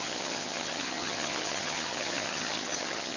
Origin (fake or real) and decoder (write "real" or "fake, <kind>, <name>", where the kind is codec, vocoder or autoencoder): fake, vocoder, HiFi-GAN